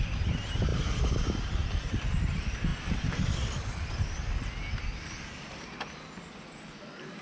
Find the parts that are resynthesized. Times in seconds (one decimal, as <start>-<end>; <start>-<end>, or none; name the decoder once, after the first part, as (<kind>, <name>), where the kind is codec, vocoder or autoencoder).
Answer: 0.7-1.9 (vocoder, BigVGAN v2)